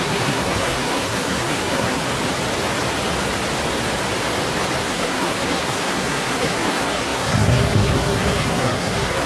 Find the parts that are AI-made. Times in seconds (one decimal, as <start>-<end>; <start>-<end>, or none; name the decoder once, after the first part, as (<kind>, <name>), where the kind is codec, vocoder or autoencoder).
0.0-2.0 (codec, SNAC); 4.8-9.3

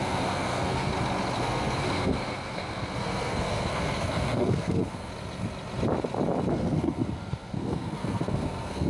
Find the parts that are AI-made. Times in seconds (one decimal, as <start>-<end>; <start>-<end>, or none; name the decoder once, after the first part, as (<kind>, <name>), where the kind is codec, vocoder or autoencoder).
0.0-0.9 (codec, SNAC); 1.4-5.1; 6.5-8.9

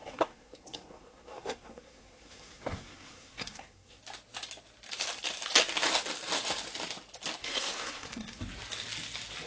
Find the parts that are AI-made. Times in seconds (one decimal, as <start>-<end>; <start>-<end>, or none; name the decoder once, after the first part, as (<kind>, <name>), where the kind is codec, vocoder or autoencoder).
0.0-4.0 (codec, SNAC); 7.4-8.4

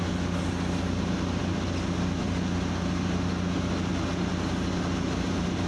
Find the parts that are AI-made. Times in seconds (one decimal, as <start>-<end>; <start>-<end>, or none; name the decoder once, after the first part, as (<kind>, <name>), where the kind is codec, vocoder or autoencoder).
none

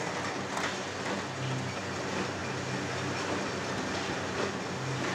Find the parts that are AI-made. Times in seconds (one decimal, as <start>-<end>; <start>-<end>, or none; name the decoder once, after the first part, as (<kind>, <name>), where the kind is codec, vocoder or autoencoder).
none